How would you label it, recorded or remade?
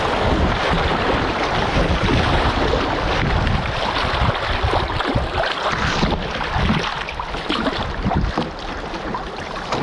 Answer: recorded